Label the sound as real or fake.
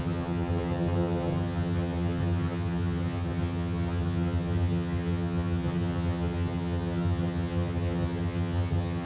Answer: fake